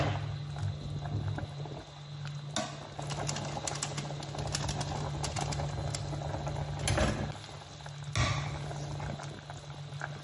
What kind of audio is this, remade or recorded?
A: recorded